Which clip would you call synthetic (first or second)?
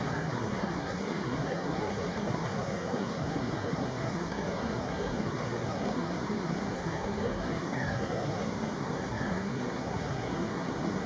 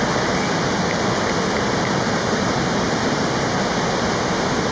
first